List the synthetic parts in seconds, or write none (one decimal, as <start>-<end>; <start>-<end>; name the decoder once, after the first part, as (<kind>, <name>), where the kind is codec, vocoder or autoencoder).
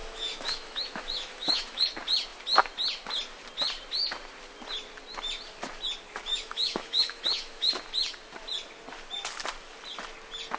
0.0-1.8 (autoencoder, DAC-VAE); 6.3-7.7